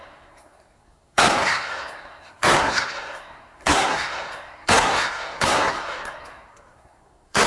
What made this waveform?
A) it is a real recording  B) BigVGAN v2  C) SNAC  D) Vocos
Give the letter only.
C